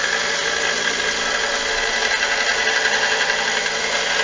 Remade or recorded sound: recorded